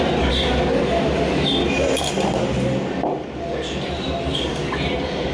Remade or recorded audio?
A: recorded